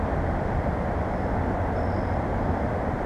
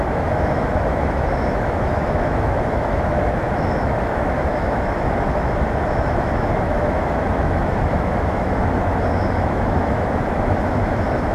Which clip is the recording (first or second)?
first